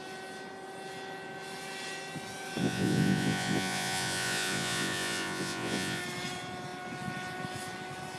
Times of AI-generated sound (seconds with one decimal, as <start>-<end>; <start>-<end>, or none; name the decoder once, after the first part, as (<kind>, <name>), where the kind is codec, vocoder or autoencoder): 2.6-6.0 (vocoder, Vocos)